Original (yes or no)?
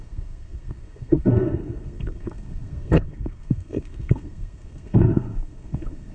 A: no